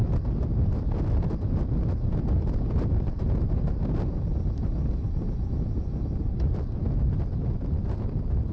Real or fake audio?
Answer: real